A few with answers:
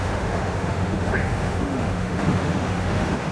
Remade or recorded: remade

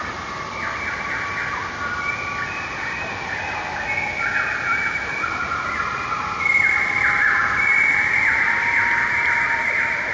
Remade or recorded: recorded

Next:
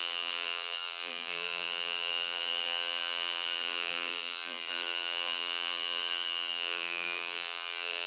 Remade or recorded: remade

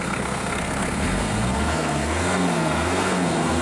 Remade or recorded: remade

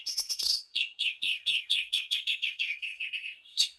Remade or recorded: remade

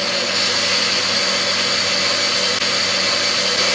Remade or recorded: recorded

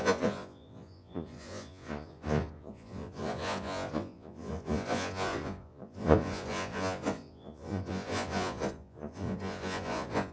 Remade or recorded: remade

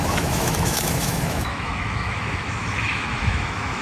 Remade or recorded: remade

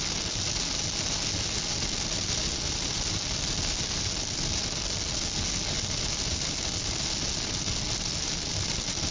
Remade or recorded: recorded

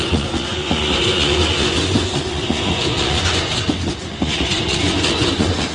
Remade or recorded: remade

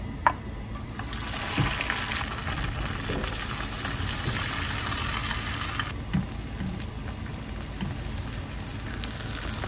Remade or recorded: recorded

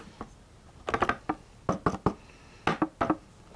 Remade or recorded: recorded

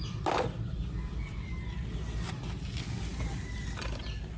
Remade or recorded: recorded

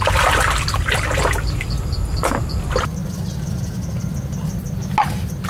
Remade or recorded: recorded